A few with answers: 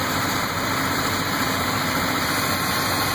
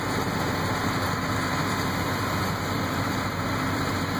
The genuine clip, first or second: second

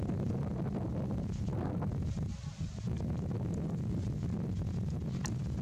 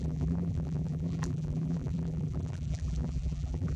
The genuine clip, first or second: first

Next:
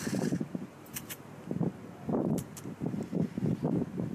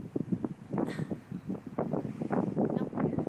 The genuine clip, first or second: second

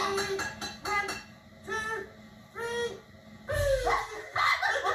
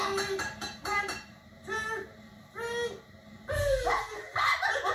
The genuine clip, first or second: first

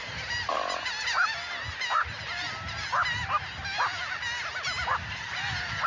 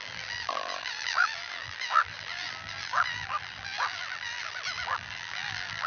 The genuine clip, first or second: first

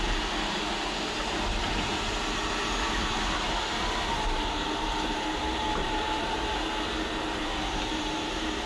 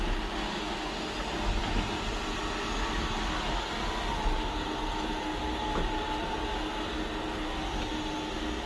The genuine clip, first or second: second